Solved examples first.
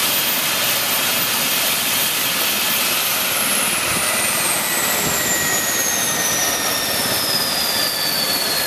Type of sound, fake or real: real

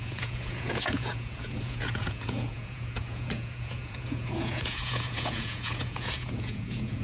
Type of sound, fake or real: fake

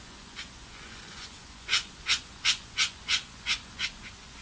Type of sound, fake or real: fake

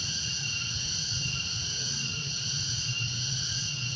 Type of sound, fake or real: fake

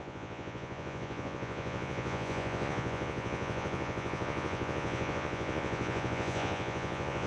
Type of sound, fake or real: fake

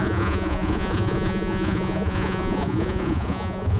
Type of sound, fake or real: fake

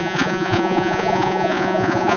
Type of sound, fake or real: fake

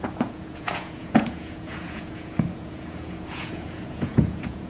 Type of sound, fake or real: fake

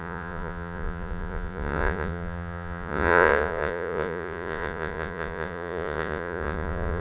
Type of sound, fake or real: fake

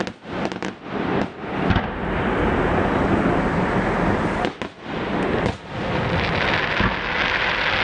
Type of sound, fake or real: real